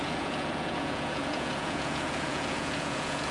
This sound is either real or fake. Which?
fake